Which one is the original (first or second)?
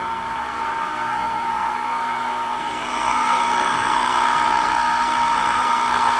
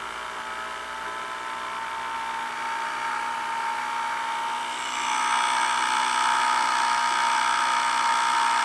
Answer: second